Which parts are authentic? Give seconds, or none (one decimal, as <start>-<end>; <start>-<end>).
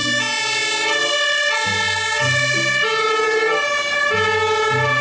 0.0-5.0